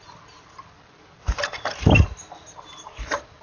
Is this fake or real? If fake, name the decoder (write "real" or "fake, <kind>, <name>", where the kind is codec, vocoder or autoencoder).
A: real